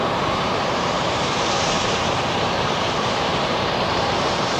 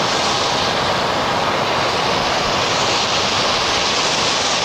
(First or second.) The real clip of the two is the second